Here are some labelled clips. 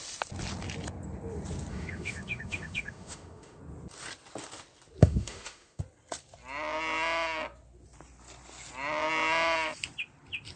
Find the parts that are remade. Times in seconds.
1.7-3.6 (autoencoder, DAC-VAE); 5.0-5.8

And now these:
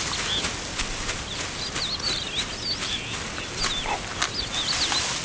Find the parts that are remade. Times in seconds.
none

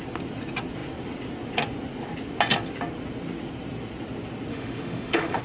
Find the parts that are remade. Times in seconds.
4.5-5.4 (autoencoder, DAC-VAE)

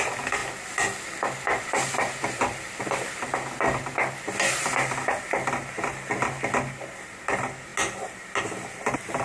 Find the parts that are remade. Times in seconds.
none

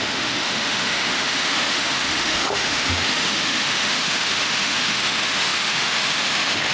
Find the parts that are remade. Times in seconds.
0.0-6.7 (autoencoder, DAC-VAE)

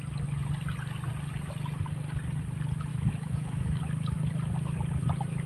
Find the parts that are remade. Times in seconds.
2.9-3.8 (autoencoder, DAC-VAE)

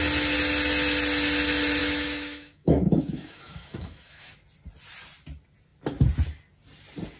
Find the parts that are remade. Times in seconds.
1.8-4.3 (autoencoder, DAC-VAE)